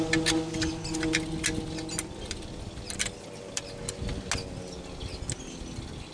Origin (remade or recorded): recorded